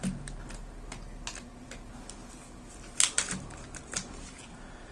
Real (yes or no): yes